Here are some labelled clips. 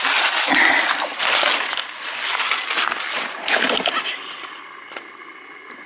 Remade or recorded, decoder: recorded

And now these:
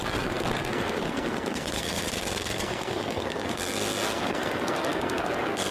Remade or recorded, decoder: remade, codec, SNAC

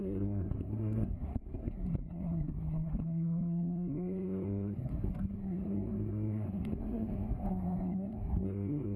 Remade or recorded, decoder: remade, codec, SNAC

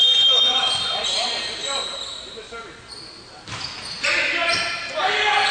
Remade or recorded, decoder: recorded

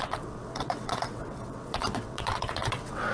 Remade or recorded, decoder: remade, vocoder, WaveNeXt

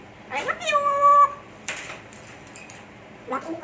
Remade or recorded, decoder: remade, vocoder, BigVGAN v2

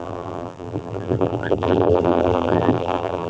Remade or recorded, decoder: remade, vocoder, BigVGAN v2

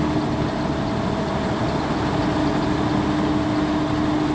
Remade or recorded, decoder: recorded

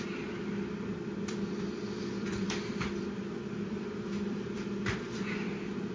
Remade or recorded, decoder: remade, vocoder, BigVGAN v2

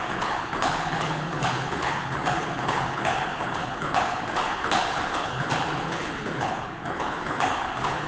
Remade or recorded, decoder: remade, codec, HILCodec